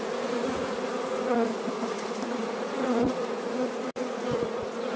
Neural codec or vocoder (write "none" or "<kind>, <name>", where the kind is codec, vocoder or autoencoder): vocoder, Vocos